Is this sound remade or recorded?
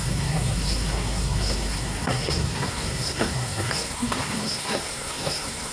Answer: remade